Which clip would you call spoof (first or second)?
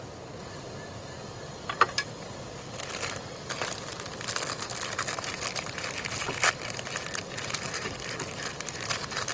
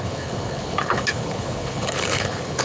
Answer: second